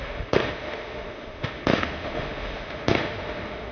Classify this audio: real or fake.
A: fake